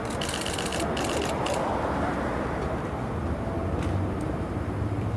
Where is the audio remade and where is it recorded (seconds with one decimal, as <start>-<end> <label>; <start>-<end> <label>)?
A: 0.0-5.2 recorded